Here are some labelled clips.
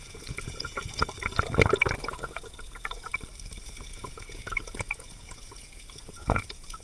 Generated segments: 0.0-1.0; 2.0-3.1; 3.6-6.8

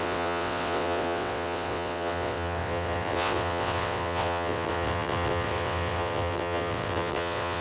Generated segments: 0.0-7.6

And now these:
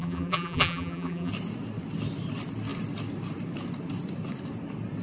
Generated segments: 0.0-1.3